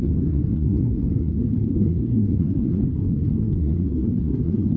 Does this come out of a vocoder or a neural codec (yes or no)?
yes